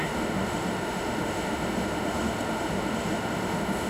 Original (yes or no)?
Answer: no